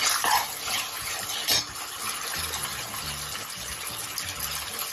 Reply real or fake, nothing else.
real